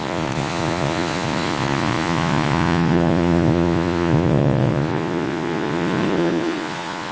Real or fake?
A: fake